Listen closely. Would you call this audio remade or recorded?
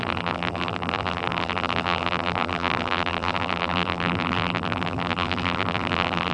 remade